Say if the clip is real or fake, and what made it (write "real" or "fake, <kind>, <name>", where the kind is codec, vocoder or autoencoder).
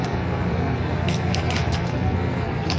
fake, codec, SNAC